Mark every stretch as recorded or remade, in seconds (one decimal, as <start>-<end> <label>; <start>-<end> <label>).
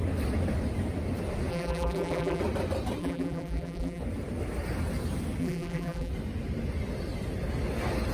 0.0-1.5 recorded; 1.5-2.4 remade; 2.4-3.0 recorded; 3.0-4.0 remade; 4.0-5.4 recorded; 5.4-6.1 remade; 6.1-8.1 recorded